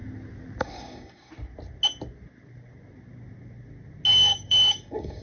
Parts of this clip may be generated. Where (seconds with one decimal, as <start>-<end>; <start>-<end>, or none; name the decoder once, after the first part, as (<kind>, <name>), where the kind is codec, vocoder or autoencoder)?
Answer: 0.6-1.3 (codec, DAC); 4.1-5.2